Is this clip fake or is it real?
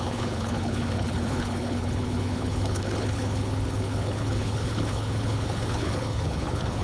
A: fake